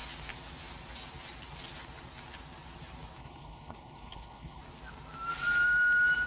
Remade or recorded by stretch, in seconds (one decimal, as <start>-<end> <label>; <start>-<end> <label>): 0.0-3.2 recorded; 3.2-4.6 remade; 4.6-6.3 recorded